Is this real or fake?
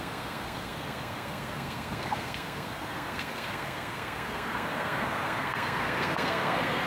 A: fake